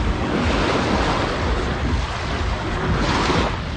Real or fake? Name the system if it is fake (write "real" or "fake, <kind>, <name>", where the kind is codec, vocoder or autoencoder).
real